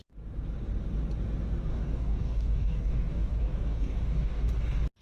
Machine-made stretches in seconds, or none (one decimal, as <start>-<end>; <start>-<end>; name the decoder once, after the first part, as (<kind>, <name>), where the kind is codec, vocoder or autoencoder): 1.7-4.5 (codec, DAC)